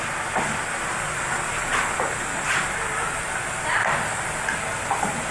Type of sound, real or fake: real